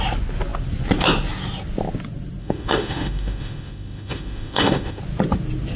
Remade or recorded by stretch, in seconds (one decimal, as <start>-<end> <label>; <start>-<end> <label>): 0.0-2.4 recorded; 2.4-5.0 remade; 5.0-5.8 recorded